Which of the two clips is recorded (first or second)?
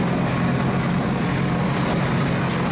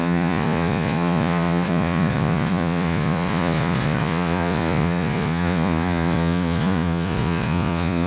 first